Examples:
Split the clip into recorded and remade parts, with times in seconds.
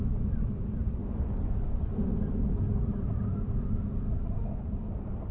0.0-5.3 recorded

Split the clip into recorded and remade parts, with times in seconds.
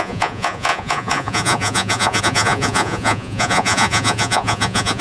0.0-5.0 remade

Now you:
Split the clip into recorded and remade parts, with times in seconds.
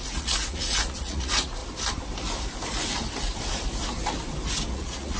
0.0-1.6 remade; 1.6-4.7 recorded; 4.7-5.2 remade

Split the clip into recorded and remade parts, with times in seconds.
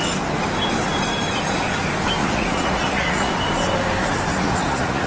0.0-2.2 recorded; 2.2-3.3 remade; 3.3-4.3 recorded; 4.3-5.1 remade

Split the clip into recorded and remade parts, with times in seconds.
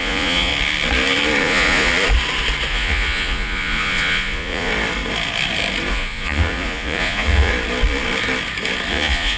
0.0-0.5 remade; 0.5-1.4 recorded; 1.4-1.9 remade; 1.9-2.7 recorded; 2.7-4.7 remade; 4.7-5.9 recorded; 5.9-7.5 remade; 7.5-8.9 recorded; 8.9-9.4 remade